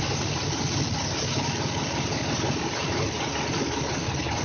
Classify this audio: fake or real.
real